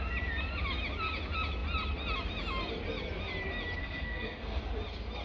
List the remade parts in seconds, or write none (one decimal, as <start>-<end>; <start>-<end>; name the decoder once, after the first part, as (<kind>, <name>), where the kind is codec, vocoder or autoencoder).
3.8-4.6 (codec, SNAC)